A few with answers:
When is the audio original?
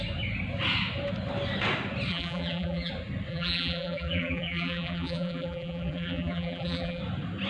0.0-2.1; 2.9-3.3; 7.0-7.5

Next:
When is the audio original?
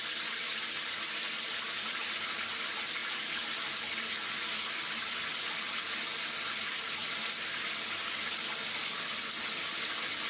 0.0-3.0; 3.8-10.3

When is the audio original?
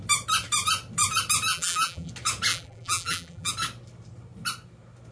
0.0-1.5; 2.1-2.5; 3.5-5.1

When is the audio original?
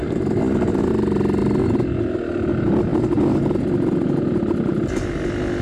0.9-5.6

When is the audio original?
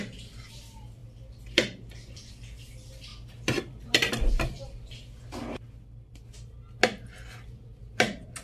0.0-1.0; 2.3-3.1; 4.3-8.4